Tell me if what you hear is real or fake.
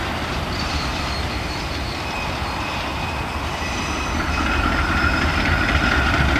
fake